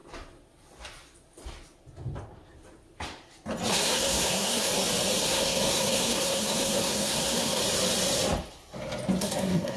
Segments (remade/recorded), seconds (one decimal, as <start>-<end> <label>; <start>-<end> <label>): 0.0-3.7 recorded; 3.7-4.7 remade; 4.7-5.2 recorded; 5.2-7.6 remade; 7.6-9.2 recorded; 9.2-9.8 remade